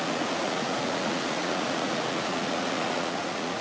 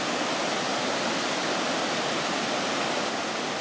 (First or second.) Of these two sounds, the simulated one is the first